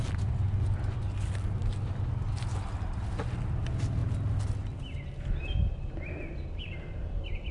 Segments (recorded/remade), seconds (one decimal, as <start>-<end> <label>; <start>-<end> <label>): 0.0-7.5 recorded